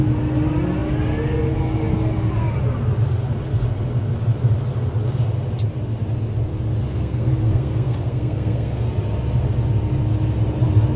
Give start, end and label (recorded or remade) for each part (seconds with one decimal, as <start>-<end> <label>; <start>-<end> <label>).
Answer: 0.0-6.9 recorded; 6.9-8.8 remade; 8.8-11.0 recorded